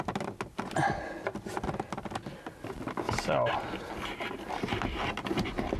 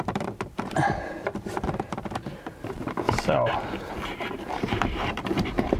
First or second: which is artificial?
second